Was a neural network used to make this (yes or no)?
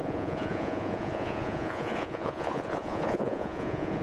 yes